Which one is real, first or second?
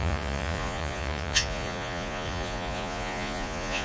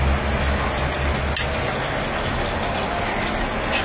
second